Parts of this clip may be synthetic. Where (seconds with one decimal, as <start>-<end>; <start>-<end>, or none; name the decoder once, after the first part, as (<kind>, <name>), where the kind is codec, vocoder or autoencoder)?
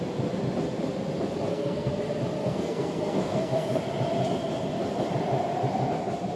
1.5-2.0 (codec, SNAC); 2.4-3.8